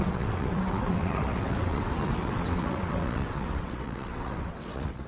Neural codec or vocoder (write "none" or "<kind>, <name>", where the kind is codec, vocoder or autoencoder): vocoder, WaveNeXt